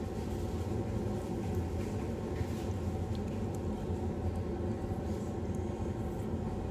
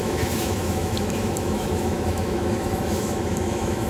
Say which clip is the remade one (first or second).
second